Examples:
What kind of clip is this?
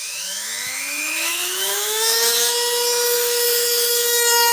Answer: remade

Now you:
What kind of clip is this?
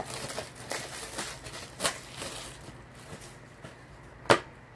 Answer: recorded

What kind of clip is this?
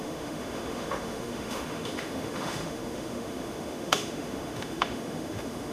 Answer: remade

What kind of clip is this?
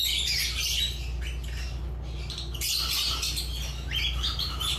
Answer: recorded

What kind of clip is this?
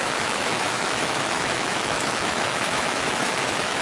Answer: remade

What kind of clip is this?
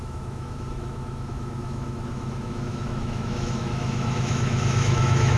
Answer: remade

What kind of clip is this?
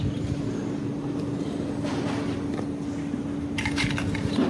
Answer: recorded